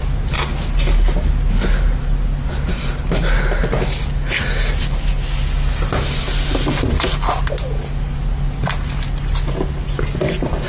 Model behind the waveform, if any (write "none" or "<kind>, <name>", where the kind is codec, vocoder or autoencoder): none